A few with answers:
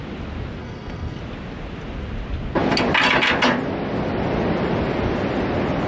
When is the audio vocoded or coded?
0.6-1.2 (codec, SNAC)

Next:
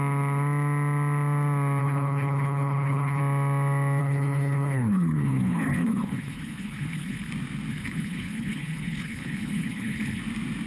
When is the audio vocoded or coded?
1.8-3.2 (codec, HILCodec); 4.0-7.3; 7.7-10.2

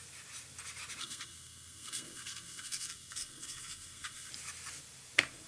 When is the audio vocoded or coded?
1.0-4.3 (codec, SNAC)